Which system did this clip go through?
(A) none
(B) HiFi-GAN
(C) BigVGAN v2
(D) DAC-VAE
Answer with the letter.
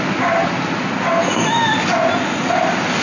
A